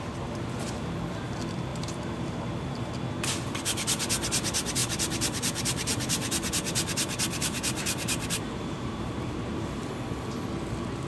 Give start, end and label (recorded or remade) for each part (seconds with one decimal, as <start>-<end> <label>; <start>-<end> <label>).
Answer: 0.0-1.7 recorded; 1.7-2.9 remade; 2.9-4.8 recorded; 4.8-9.9 remade; 9.9-11.1 recorded